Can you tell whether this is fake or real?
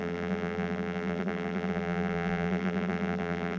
fake